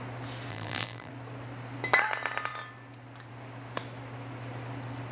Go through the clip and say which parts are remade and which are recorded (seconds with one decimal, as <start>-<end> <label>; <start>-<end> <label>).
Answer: 0.0-0.5 recorded; 0.5-1.1 remade; 1.1-5.1 recorded